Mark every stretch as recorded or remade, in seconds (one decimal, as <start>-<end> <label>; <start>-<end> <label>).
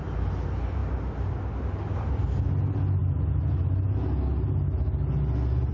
0.0-5.7 recorded